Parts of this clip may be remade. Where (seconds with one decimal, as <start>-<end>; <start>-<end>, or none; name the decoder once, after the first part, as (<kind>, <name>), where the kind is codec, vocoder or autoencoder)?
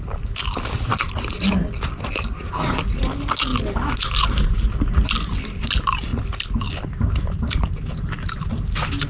none